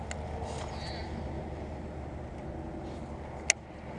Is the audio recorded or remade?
recorded